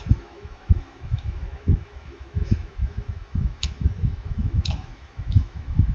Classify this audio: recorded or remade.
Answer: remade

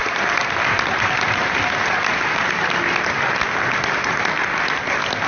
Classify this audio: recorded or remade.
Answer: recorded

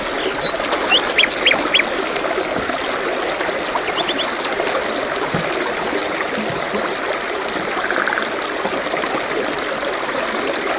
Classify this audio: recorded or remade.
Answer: recorded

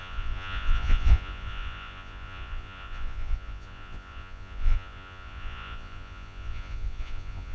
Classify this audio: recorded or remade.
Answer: remade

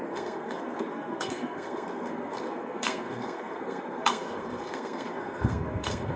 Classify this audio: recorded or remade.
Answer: remade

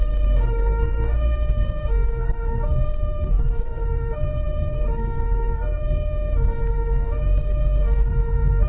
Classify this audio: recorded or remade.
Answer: remade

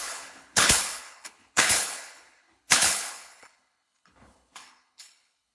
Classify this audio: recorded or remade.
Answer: remade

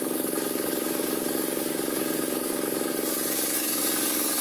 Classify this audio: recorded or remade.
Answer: remade